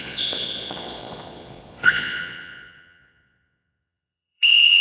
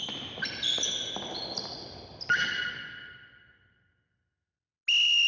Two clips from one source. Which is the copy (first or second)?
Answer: first